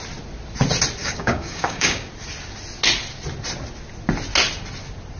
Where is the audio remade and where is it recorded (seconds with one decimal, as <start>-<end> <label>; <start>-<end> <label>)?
0.0-1.0 recorded; 1.0-2.1 remade; 2.1-5.2 recorded